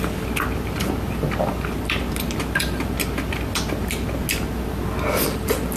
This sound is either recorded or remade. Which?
recorded